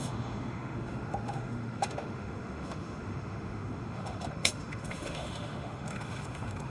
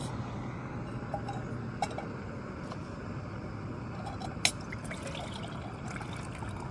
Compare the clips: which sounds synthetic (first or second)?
first